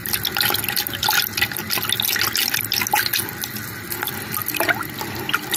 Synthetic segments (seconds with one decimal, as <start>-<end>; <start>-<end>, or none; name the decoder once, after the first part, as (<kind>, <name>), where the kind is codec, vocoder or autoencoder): none